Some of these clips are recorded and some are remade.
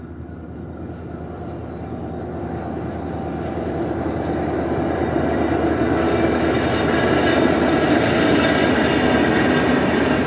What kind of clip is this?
recorded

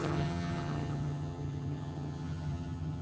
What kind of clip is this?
remade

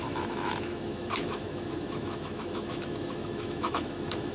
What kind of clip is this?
remade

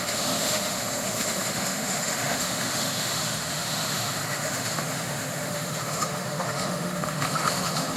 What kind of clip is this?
remade